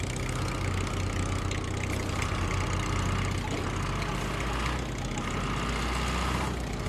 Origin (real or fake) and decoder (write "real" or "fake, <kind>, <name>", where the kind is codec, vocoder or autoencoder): real